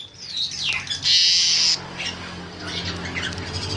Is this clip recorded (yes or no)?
yes